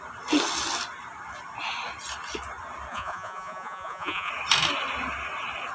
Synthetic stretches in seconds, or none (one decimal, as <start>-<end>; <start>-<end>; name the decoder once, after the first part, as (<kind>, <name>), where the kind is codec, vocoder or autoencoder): 2.9-4.3 (vocoder, Vocos)